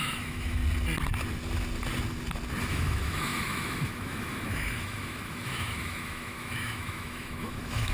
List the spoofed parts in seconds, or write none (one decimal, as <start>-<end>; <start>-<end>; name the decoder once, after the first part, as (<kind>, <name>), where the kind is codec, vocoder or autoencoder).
0.0-0.6 (autoencoder, DAC-VAE); 2.6-7.9